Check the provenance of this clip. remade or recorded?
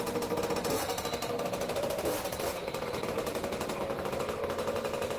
recorded